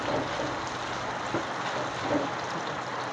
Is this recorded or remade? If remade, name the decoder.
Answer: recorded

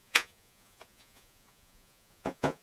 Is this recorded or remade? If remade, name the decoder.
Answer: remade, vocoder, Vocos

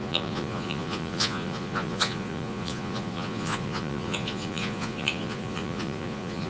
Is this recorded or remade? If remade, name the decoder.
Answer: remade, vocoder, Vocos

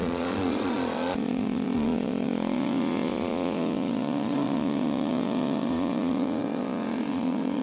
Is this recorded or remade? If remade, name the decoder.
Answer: remade, vocoder, Vocos